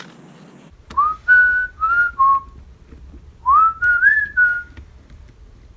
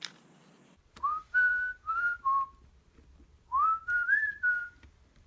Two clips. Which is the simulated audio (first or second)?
second